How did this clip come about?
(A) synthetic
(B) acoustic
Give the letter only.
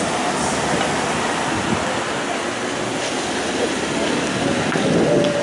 B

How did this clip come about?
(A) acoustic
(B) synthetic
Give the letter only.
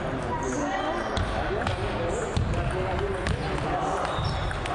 A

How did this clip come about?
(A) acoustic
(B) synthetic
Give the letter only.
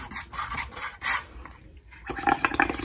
B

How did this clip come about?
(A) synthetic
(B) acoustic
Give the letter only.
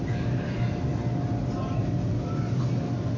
B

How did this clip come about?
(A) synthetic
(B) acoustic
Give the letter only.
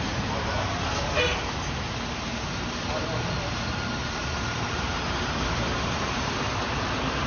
A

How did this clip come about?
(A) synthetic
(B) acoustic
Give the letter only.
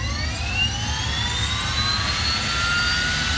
B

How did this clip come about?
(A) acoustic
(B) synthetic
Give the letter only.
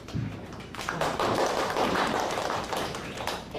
B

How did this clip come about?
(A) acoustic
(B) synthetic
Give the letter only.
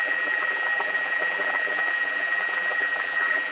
B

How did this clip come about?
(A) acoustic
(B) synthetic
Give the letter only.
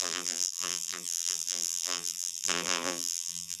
B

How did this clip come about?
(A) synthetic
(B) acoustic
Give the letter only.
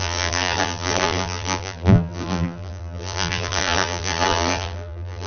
A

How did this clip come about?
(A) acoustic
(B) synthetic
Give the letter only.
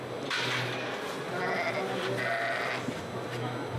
A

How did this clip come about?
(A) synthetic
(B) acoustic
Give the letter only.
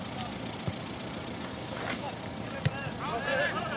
A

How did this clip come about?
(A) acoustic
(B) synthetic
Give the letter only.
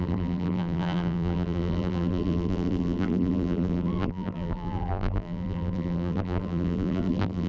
B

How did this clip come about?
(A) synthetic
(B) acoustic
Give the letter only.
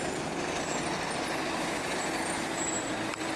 A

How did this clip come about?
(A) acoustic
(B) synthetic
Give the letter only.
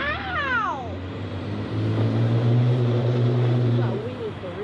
B